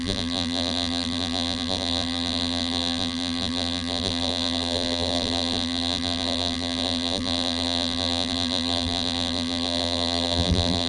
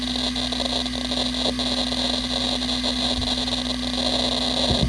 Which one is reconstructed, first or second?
first